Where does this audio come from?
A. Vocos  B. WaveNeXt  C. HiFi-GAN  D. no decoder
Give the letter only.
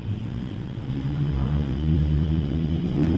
B